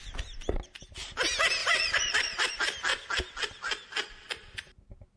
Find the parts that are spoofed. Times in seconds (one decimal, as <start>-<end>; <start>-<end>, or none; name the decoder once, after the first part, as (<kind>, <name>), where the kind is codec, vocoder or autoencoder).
1.6-2.5 (vocoder, Vocos)